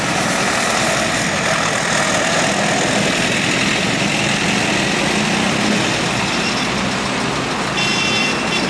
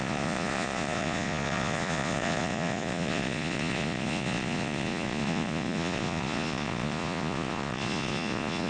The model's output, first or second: second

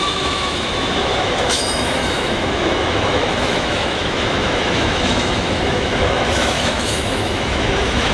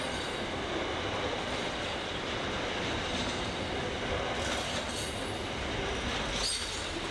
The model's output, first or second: first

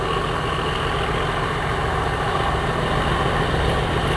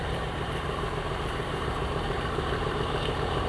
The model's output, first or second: second